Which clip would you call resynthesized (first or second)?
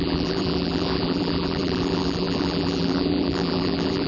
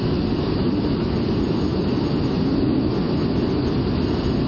first